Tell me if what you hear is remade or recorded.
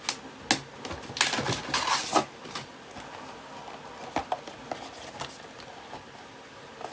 recorded